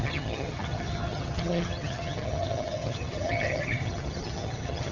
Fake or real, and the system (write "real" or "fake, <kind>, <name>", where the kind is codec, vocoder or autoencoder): fake, vocoder, HiFi-GAN